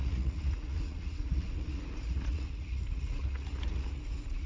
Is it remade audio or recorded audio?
remade